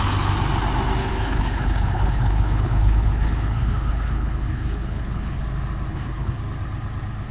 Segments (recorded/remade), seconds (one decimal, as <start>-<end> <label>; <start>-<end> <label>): 0.0-1.0 recorded; 1.0-5.4 remade; 5.4-5.9 recorded; 5.9-6.4 remade; 6.4-7.3 recorded